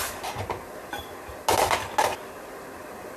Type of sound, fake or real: real